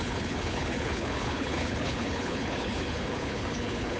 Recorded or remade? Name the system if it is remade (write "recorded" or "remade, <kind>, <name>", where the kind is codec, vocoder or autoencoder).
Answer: remade, codec, HILCodec